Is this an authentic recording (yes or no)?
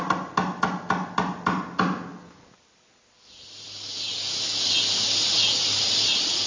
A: yes